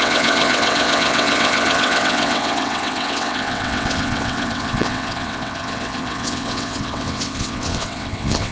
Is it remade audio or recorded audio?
remade